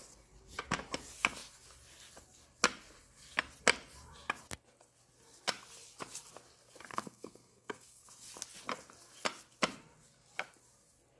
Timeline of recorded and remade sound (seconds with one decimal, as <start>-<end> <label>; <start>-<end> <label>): 0.0-6.9 recorded; 6.9-8.0 remade; 8.0-11.2 recorded